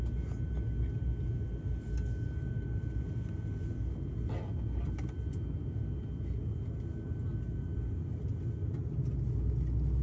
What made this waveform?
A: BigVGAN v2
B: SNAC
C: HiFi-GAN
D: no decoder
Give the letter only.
D